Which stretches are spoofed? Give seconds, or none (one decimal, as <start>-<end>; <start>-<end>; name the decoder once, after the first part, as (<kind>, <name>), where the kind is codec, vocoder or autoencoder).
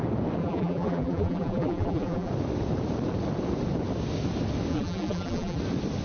0.4-2.3 (vocoder, BigVGAN v2); 4.7-5.6